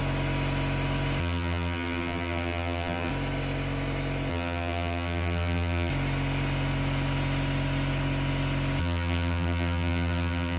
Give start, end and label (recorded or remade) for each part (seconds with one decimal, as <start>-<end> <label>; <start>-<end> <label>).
0.0-1.2 recorded; 1.2-3.1 remade; 3.1-4.3 recorded; 4.3-5.9 remade; 5.9-8.8 recorded; 8.8-10.6 remade

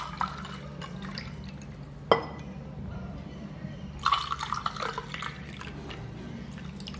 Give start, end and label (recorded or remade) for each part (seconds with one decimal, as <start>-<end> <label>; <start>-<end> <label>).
0.0-2.2 recorded; 2.2-4.2 remade; 4.2-7.0 recorded

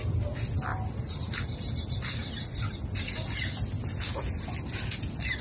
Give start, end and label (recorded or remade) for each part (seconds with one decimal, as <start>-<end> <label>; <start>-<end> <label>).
0.0-0.7 recorded; 0.7-1.2 remade; 1.2-2.2 recorded; 2.2-3.6 remade; 3.6-5.4 recorded

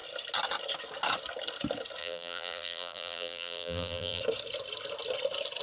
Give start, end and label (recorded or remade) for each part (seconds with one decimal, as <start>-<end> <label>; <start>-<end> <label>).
0.0-2.0 recorded; 2.0-4.2 remade; 4.2-5.6 recorded

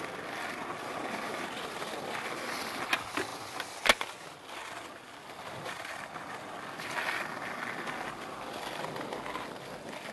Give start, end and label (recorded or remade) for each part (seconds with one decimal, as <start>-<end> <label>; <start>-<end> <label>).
0.0-10.1 recorded

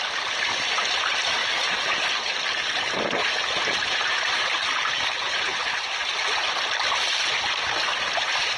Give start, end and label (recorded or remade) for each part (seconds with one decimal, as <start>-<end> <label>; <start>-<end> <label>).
0.0-1.4 recorded; 1.4-2.8 remade; 2.8-3.2 recorded; 3.2-5.5 remade; 5.5-8.6 recorded

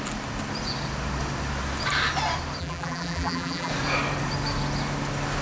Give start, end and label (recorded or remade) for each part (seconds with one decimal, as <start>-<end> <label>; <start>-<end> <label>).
0.0-2.6 recorded; 2.6-3.7 remade; 3.7-5.4 recorded

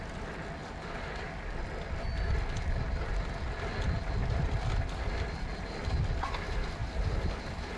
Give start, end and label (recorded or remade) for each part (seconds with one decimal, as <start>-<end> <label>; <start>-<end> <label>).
0.0-0.6 recorded; 0.6-1.3 remade; 1.3-6.8 recorded; 6.8-7.3 remade; 7.3-7.8 recorded